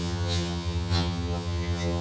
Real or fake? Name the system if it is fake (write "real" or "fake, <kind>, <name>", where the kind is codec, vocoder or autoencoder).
fake, vocoder, HiFi-GAN